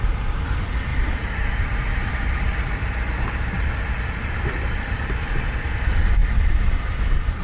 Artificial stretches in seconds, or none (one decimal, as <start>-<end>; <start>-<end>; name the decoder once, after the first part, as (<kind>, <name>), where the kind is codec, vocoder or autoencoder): none